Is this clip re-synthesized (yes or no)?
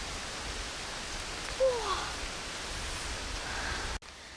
no